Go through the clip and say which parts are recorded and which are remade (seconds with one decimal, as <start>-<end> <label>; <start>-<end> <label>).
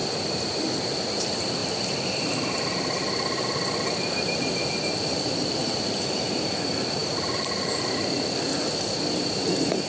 0.0-1.2 recorded; 1.2-9.9 remade